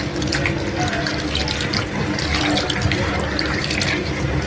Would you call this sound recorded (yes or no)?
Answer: yes